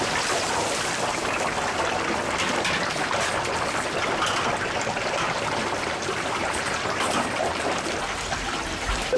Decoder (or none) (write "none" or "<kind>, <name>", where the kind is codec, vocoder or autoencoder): vocoder, BigVGAN v2